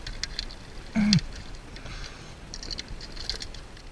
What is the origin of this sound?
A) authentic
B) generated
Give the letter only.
A